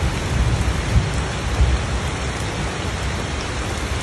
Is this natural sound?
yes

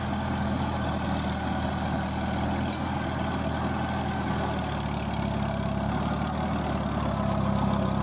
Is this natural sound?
yes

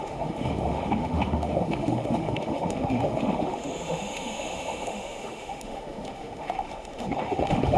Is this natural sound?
no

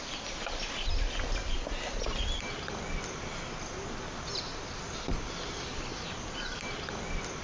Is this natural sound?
yes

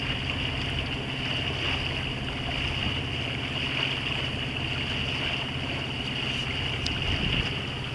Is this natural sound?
yes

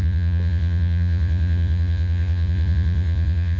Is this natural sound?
no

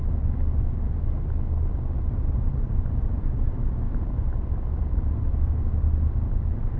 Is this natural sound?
yes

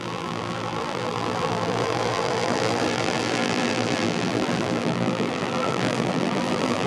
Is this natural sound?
no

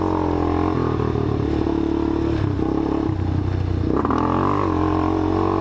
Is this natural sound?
yes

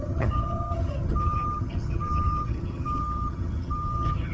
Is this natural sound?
no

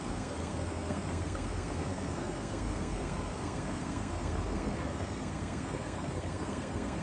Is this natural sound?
no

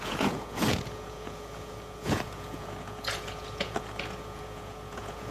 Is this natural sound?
no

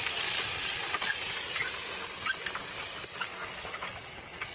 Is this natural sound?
yes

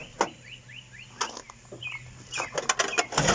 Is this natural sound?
yes